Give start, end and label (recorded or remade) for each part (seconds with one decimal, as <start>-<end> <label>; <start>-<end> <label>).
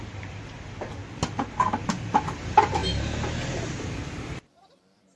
0.0-1.0 remade; 1.0-2.2 recorded; 2.2-2.8 remade; 2.8-4.0 recorded; 4.0-5.2 remade